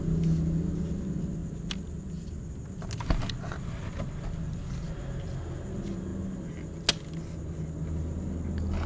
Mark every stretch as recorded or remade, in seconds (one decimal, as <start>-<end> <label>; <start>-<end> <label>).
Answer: 0.0-8.9 recorded